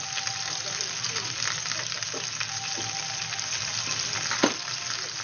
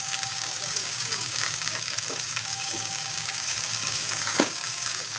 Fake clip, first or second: second